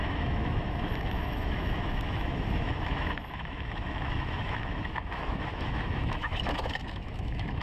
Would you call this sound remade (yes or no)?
yes